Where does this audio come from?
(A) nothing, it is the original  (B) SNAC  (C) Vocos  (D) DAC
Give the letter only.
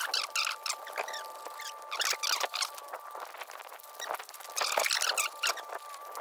A